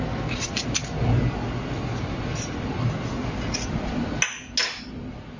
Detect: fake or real real